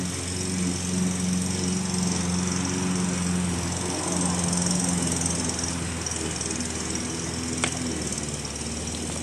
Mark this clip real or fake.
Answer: real